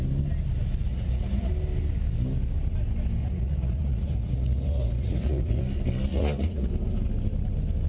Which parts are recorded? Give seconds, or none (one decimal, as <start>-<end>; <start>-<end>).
0.0-0.9; 1.5-3.2; 5.6-6.1; 6.7-7.9